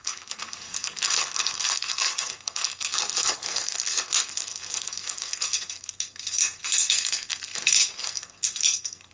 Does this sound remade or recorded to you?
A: remade